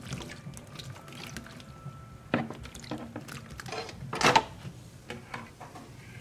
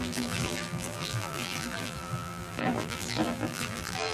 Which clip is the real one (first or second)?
first